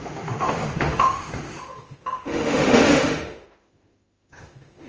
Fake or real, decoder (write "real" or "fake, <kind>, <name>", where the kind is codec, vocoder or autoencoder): fake, autoencoder, DAC-VAE